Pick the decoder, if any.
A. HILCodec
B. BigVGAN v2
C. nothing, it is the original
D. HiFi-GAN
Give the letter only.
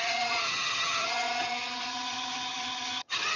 D